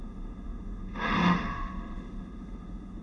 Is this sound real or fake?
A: fake